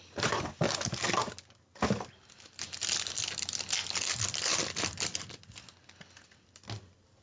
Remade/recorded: recorded